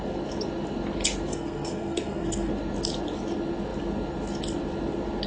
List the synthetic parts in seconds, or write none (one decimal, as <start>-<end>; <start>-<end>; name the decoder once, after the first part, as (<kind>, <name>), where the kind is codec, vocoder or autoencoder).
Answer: 1.3-2.5 (codec, SNAC)

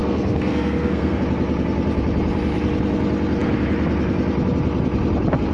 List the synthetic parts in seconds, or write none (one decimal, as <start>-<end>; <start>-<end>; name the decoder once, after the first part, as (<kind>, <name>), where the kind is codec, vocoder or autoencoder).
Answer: 0.0-1.2 (codec, SNAC)